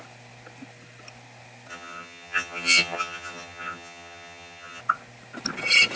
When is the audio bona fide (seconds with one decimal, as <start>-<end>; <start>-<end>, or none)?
0.0-1.7; 4.8-6.0